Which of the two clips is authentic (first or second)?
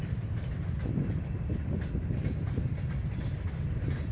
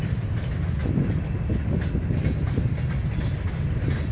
second